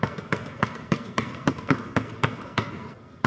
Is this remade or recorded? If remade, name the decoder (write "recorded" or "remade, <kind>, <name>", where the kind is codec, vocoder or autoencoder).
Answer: remade, codec, SNAC